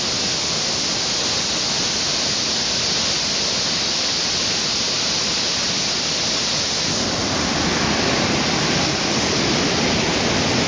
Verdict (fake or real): real